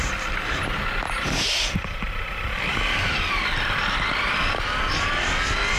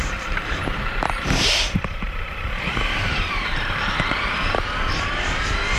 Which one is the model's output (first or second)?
second